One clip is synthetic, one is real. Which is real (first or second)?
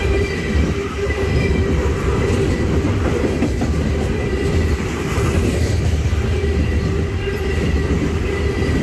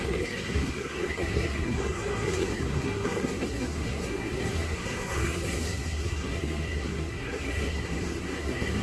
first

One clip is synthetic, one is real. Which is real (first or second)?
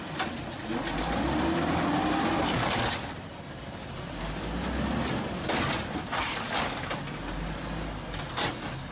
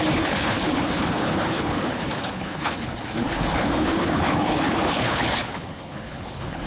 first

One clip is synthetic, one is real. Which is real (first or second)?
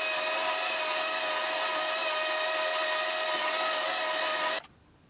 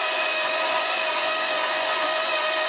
first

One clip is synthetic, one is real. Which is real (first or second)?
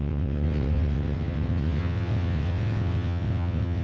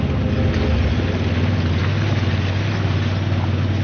second